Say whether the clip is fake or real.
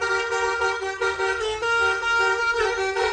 fake